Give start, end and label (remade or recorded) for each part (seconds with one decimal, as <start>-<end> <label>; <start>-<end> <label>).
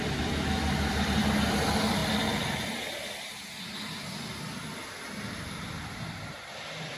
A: 0.0-7.0 recorded